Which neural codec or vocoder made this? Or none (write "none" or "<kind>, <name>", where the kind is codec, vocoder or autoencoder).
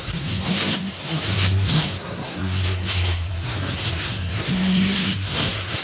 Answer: codec, SNAC